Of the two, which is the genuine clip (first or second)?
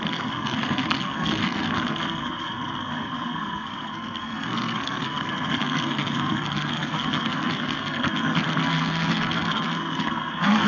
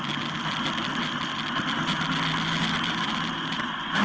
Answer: second